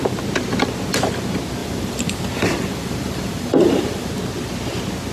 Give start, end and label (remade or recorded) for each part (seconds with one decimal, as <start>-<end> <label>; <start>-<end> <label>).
0.0-1.6 recorded; 1.6-4.1 remade; 4.1-5.1 recorded